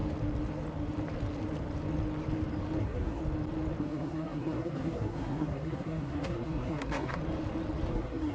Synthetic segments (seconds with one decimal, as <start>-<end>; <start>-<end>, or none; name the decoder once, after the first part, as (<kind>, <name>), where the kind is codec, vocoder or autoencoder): 2.8-3.2 (codec, SNAC); 3.8-7.2; 7.9-8.3